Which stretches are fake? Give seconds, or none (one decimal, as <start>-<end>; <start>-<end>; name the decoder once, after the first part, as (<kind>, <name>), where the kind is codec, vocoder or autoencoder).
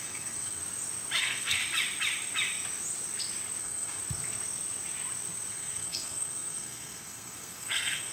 0.0-0.6 (codec, SNAC); 1.2-1.6; 3.6-4.0; 5.5-8.1